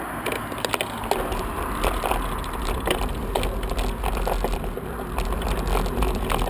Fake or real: real